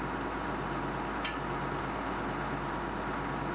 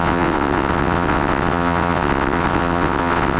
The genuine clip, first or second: first